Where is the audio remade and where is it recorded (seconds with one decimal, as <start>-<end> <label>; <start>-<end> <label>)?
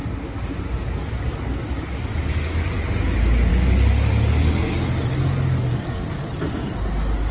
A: 0.0-2.8 remade; 2.8-3.5 recorded; 3.5-6.3 remade; 6.3-7.3 recorded